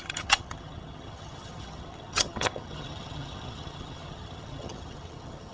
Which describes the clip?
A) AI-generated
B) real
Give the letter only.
A